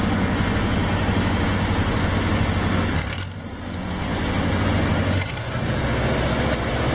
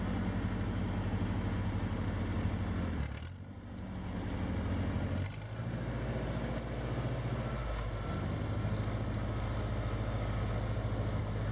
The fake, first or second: first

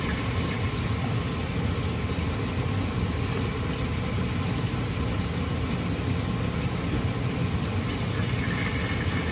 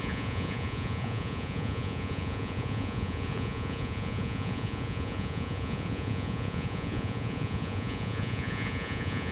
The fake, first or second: second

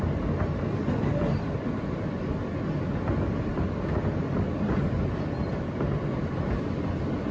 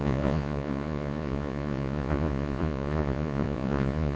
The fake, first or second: second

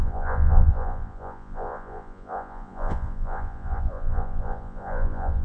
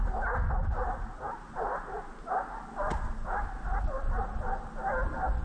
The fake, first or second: first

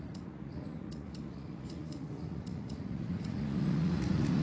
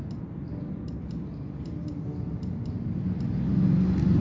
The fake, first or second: first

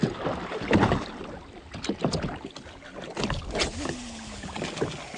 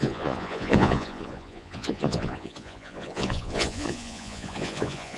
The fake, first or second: second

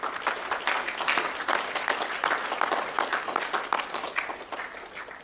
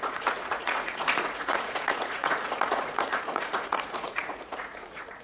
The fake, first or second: second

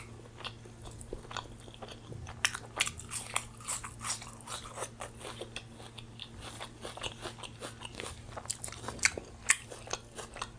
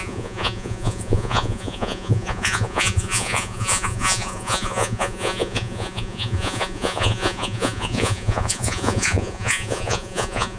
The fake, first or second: second